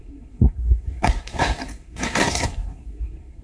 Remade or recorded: remade